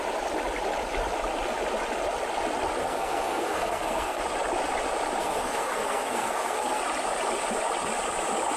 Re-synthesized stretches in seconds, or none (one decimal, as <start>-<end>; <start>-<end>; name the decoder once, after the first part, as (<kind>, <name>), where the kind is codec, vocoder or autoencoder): 2.8-4.2 (codec, SNAC); 5.2-6.8